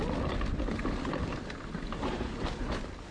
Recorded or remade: recorded